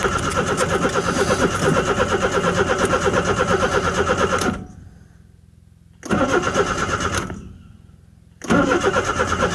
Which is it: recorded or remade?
recorded